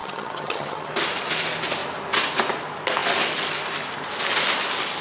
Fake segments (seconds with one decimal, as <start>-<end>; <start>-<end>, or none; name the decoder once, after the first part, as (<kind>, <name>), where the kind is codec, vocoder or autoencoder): 0.0-0.9 (vocoder, HiFi-GAN)